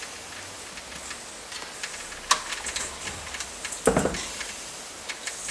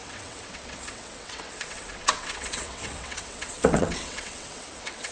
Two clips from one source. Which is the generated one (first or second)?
second